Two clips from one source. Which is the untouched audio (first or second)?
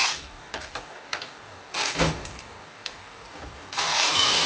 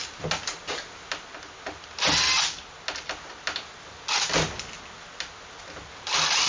second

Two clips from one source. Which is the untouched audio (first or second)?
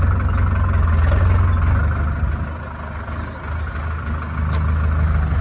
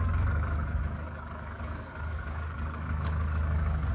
first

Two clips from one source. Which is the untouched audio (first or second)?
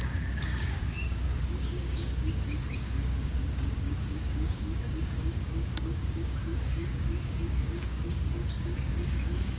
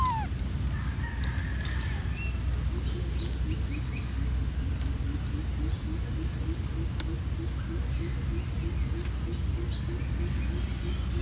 second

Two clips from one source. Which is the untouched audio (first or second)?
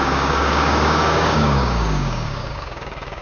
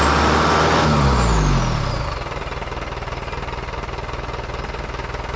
second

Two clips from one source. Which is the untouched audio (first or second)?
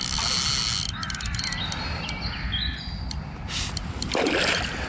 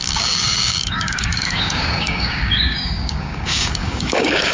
first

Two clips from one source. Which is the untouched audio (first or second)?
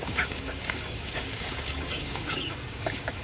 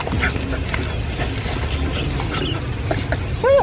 second